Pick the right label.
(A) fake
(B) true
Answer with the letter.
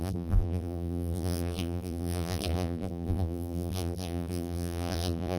A